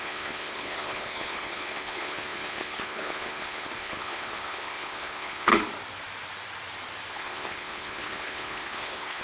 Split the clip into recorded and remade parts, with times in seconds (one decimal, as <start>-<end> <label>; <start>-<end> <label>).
0.0-5.5 remade; 5.5-7.1 recorded; 7.1-9.2 remade